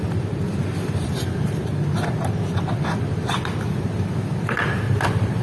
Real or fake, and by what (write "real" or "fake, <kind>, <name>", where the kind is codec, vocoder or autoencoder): fake, vocoder, BigVGAN v2